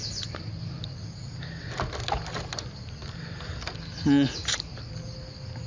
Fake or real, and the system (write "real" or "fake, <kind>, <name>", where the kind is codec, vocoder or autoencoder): real